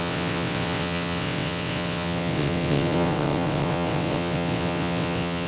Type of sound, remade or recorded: remade